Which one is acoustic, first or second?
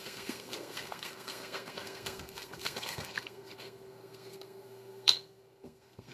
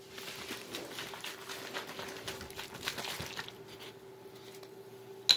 second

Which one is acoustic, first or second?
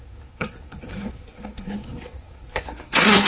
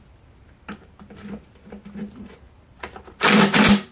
second